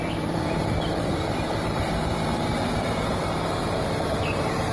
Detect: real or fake fake